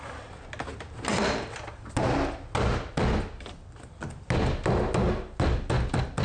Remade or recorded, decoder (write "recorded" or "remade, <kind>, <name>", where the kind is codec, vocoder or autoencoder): recorded